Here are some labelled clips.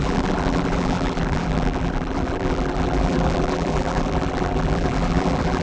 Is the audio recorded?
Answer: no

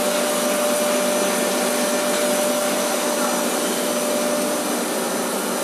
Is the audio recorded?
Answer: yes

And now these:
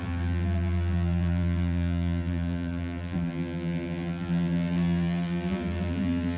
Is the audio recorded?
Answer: no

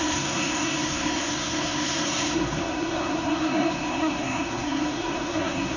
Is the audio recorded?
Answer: no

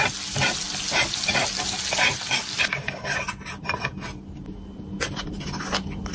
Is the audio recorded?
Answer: yes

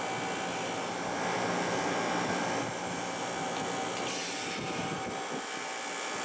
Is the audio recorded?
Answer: yes